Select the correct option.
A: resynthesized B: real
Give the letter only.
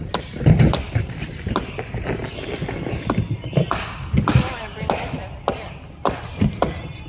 B